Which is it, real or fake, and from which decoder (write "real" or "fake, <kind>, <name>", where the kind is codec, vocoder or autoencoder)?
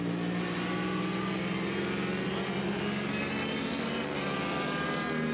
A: real